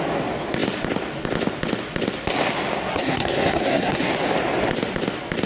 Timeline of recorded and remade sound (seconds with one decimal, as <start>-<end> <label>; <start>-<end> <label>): 0.0-2.9 recorded; 2.9-4.1 remade; 4.1-5.5 recorded